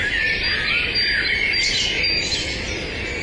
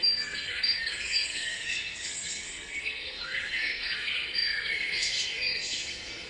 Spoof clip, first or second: second